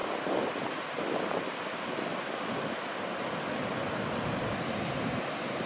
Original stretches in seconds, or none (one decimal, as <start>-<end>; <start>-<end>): 0.6-2.1; 3.4-5.7